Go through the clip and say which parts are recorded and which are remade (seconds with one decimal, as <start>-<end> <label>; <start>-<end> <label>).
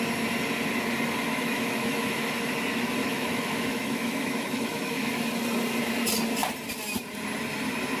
0.0-1.3 recorded; 1.3-2.5 remade; 2.5-3.0 recorded; 3.0-5.2 remade; 5.2-8.0 recorded